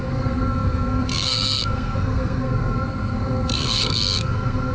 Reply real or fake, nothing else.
fake